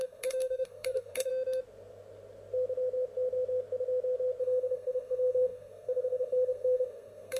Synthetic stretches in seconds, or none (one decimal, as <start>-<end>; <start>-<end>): 0.0-1.3; 4.4-7.4